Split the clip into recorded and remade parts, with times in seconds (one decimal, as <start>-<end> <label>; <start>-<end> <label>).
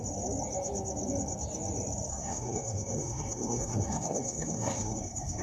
0.0-2.1 recorded; 2.1-5.4 remade